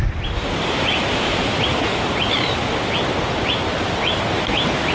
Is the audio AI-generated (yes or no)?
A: no